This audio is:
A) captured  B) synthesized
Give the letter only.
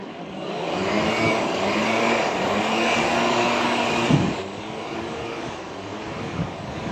B